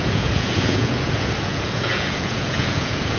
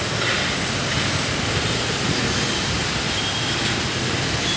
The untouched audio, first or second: second